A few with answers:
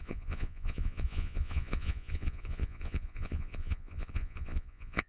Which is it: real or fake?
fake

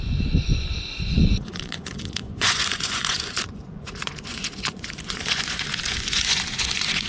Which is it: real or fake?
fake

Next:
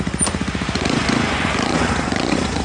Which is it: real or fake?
fake